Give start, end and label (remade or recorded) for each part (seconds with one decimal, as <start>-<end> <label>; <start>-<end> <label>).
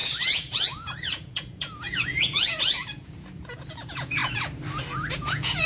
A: 0.0-4.2 remade; 4.2-5.1 recorded; 5.1-5.7 remade